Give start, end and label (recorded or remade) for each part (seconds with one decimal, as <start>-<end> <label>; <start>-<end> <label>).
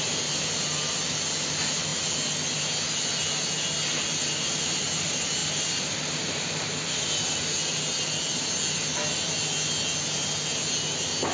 0.0-11.3 recorded